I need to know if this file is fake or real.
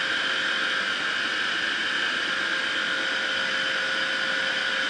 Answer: real